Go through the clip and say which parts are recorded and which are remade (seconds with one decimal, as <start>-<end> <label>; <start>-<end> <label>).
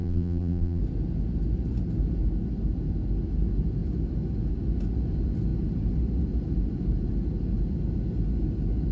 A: 0.0-0.8 remade; 0.8-8.9 recorded